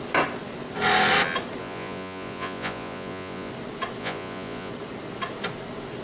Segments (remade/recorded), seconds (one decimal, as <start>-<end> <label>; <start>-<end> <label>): 0.0-1.6 recorded; 1.6-3.5 remade; 3.5-4.0 recorded; 4.0-4.7 remade; 4.7-6.0 recorded